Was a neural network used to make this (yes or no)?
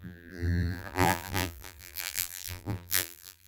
yes